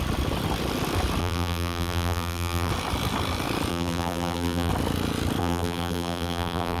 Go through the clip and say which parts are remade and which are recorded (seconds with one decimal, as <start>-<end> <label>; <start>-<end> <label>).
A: 0.0-1.2 recorded; 1.2-2.7 remade; 2.7-3.7 recorded; 3.7-4.7 remade; 4.7-5.4 recorded; 5.4-6.8 remade